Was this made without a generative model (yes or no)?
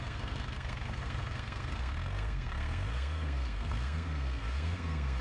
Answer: no